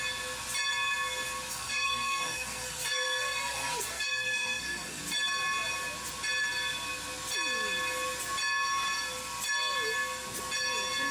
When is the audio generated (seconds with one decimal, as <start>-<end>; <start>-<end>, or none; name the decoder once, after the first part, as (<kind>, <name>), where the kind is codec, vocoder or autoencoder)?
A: 1.5-5.0 (codec, SNAC)